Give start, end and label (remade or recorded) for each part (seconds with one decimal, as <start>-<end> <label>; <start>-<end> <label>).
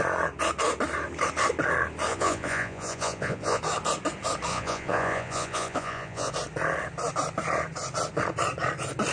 0.0-2.1 recorded; 2.1-3.6 remade; 3.6-4.5 recorded; 4.5-6.3 remade; 6.3-9.1 recorded